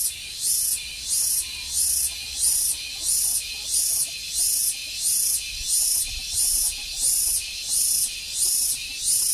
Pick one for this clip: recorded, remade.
recorded